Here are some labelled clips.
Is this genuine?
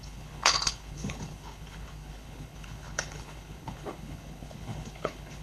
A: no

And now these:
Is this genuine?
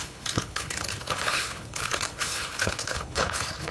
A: no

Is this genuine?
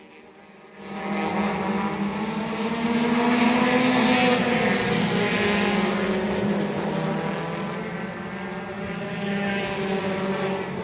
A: yes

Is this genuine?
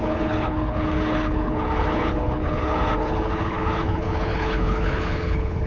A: no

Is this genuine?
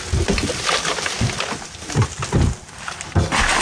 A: yes